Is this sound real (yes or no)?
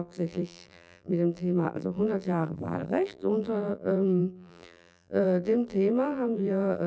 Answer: no